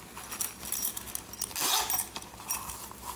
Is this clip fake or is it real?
real